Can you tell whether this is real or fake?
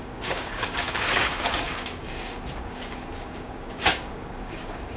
fake